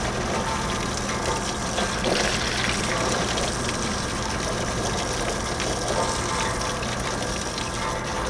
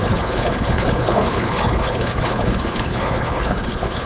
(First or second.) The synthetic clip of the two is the second